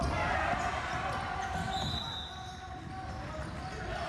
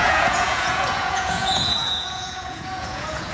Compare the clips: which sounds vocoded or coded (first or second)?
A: second